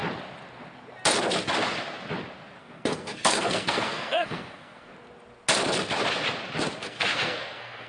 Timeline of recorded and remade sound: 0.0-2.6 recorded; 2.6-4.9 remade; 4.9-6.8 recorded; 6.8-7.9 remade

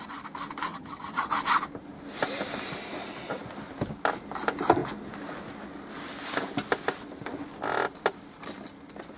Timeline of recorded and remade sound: 0.0-0.7 recorded; 0.7-1.3 remade; 1.3-9.2 recorded